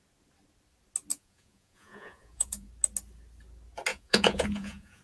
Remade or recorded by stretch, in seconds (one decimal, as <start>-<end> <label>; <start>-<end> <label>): 0.0-1.1 recorded; 1.1-2.7 remade; 2.7-3.9 recorded; 3.9-5.0 remade